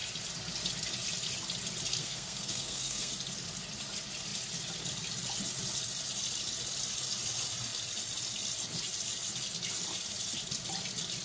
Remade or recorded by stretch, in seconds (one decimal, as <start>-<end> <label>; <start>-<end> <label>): 0.0-2.0 recorded; 2.0-3.1 remade; 3.1-11.2 recorded